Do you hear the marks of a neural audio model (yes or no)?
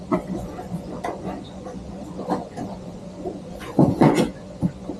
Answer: yes